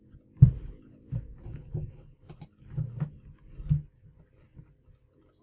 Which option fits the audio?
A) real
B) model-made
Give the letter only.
A